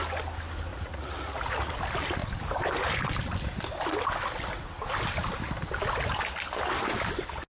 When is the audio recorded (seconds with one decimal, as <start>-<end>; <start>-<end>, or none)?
0.0-0.7; 1.7-7.5